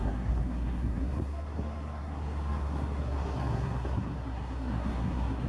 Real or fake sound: fake